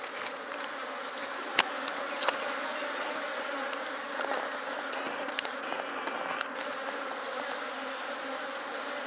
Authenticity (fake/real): real